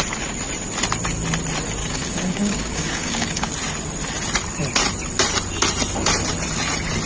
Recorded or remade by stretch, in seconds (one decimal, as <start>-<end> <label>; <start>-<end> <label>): 0.0-1.8 recorded; 1.8-3.5 remade; 3.5-7.1 recorded